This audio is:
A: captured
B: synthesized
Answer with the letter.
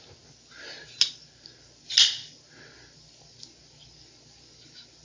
A